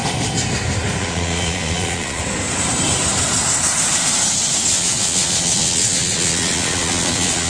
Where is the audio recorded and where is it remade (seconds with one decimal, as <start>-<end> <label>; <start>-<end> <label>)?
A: 0.0-1.0 recorded; 1.0-2.2 remade; 2.2-4.7 recorded; 4.7-7.5 remade